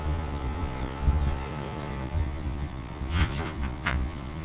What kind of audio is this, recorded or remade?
remade